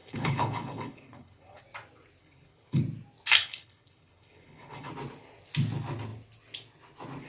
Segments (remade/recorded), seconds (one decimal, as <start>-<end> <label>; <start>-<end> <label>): 0.0-1.6 remade; 1.6-2.2 recorded; 2.2-2.8 remade; 2.8-3.4 recorded; 3.4-4.9 remade; 4.9-7.3 recorded